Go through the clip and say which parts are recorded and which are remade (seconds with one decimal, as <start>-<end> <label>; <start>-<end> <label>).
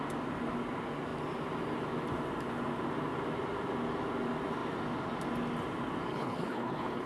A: 0.0-6.1 recorded; 6.1-7.1 remade